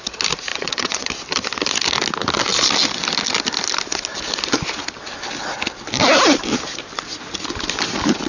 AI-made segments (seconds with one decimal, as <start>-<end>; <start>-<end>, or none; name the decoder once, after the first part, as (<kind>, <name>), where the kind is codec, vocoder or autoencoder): 0.5-1.1 (vocoder, WaveNeXt)